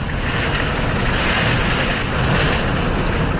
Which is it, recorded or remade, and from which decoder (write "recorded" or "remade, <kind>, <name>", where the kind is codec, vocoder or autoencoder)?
recorded